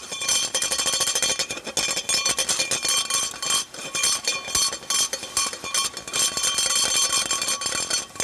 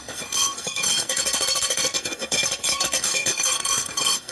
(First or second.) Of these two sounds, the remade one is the second